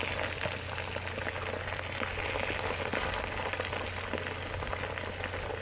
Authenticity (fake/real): real